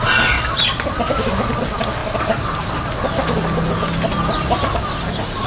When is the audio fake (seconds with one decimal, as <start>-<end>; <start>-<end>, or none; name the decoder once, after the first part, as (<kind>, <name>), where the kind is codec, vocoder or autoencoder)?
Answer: none